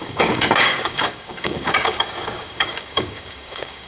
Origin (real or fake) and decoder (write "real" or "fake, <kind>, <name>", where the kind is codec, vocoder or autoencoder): fake, codec, DAC